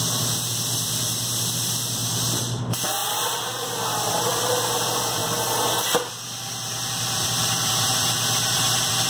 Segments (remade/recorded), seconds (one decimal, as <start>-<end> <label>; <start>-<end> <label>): 0.0-2.0 remade; 2.0-2.6 recorded; 2.6-5.2 remade; 5.2-6.1 recorded; 6.1-9.1 remade